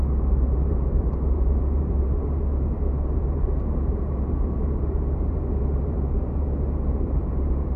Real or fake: fake